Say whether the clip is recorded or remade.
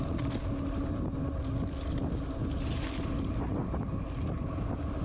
recorded